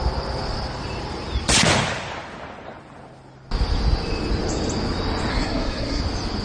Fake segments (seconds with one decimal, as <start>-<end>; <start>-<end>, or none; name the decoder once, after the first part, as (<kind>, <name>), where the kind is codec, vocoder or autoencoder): 5.3-6.0 (codec, SNAC)

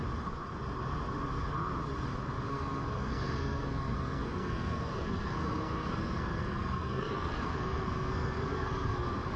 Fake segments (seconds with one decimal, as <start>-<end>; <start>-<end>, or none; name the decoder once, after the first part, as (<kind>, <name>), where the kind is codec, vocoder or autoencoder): 2.5-9.4 (codec, SNAC)